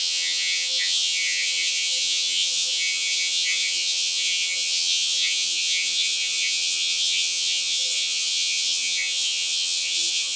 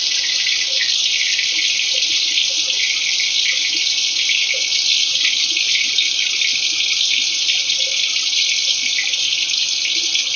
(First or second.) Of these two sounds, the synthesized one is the first